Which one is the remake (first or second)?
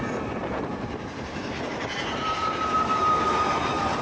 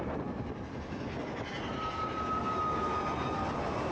first